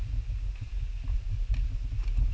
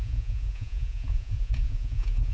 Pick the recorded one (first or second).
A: first